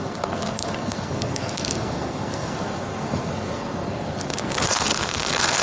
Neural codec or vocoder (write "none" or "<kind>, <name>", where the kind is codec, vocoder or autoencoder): codec, SNAC